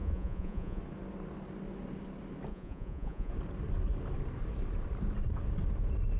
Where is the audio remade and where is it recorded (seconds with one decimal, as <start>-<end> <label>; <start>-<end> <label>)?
0.0-0.8 remade; 0.8-2.5 recorded; 2.5-3.3 remade; 3.3-6.2 recorded